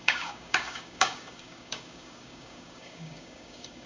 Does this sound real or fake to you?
fake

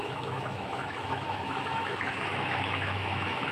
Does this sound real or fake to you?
fake